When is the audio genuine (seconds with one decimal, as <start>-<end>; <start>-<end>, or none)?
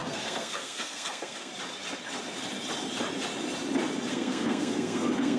1.5-4.1